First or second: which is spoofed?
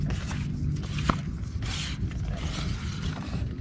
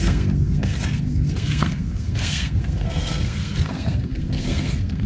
second